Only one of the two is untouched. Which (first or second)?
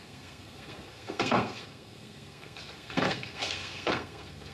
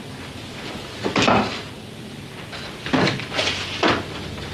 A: second